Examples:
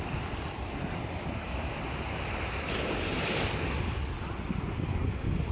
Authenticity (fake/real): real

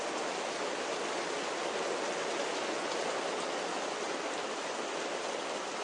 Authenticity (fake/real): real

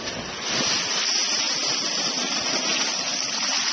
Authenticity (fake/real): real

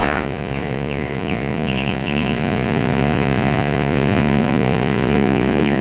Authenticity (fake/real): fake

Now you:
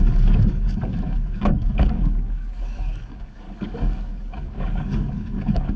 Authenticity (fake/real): fake